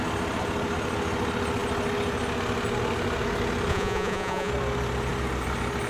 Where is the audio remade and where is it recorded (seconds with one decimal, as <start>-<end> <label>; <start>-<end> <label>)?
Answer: 0.0-3.7 recorded; 3.7-4.5 remade; 4.5-5.9 recorded